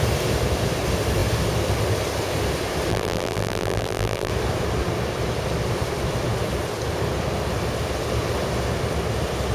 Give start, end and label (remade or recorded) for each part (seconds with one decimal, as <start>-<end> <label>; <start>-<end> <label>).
0.0-2.9 recorded; 2.9-4.3 remade; 4.3-9.5 recorded